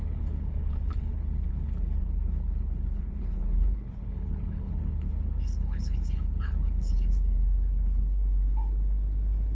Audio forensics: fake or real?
fake